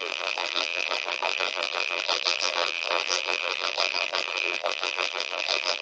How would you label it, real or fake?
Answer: fake